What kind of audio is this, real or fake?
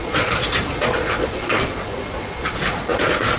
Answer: fake